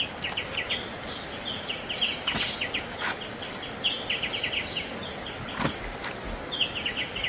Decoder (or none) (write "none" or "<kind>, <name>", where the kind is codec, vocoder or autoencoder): none